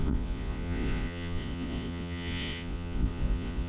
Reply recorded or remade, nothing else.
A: remade